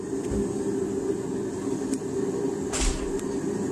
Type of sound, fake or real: real